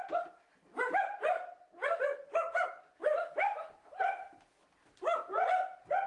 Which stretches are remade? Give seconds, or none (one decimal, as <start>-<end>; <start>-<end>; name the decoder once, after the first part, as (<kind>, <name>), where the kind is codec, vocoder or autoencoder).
0.0-6.1 (vocoder, BigVGAN v2)